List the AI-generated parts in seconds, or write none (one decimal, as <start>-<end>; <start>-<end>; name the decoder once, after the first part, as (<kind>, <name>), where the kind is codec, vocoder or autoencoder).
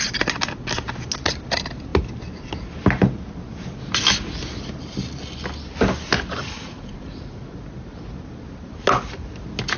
6.4-7.5 (vocoder, Vocos)